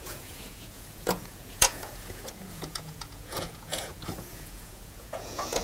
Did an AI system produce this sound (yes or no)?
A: yes